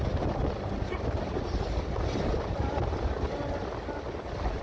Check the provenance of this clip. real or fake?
real